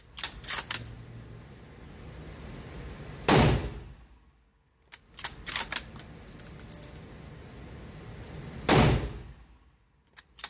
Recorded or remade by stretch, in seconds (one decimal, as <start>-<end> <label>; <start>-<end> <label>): 0.0-10.5 recorded